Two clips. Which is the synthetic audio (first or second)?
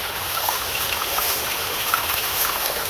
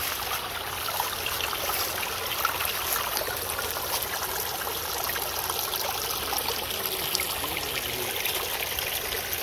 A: first